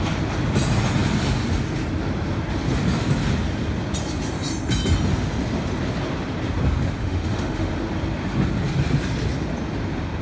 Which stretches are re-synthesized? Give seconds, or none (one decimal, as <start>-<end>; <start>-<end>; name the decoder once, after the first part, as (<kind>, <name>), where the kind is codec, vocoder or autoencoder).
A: 7.0-7.7 (autoencoder, DAC-VAE)